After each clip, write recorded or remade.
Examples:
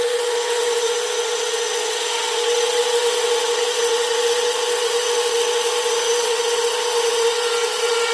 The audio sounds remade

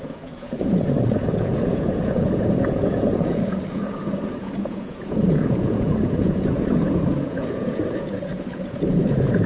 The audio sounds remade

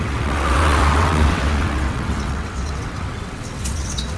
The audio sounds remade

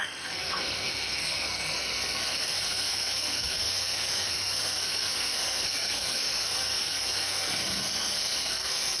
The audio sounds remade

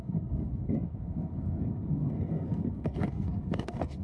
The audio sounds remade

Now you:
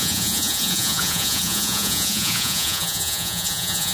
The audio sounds remade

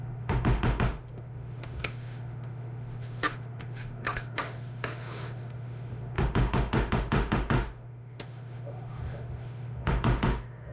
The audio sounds remade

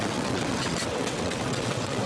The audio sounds remade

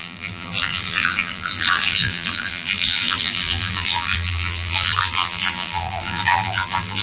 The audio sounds remade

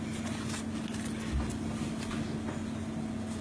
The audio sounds recorded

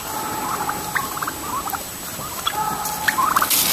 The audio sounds recorded